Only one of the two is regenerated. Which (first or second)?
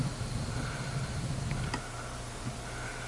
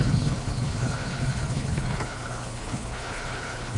second